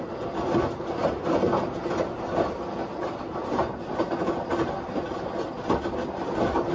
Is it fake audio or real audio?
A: real